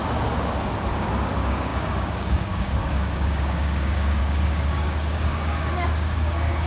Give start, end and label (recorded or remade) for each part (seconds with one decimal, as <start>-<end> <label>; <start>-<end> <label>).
0.0-0.9 recorded; 0.9-6.7 remade